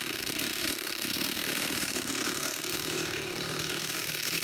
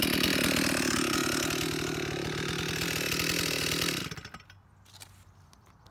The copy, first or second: first